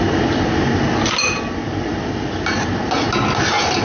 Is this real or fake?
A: real